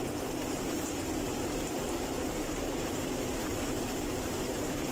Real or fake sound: fake